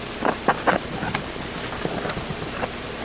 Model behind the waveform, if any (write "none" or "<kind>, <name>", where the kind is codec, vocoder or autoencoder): none